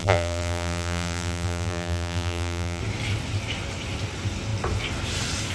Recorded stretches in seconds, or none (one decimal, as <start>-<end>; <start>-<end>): 2.8-5.5